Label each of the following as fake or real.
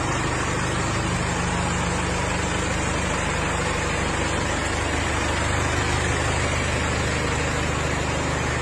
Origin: real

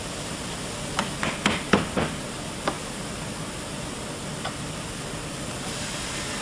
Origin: real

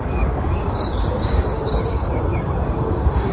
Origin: fake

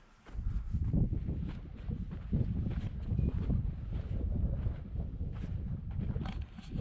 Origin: real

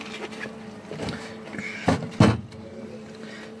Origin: real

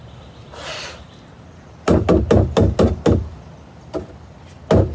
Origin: real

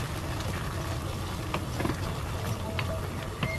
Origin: real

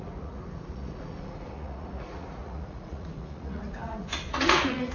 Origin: fake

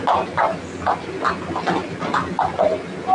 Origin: real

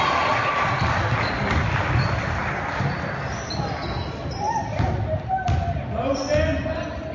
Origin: real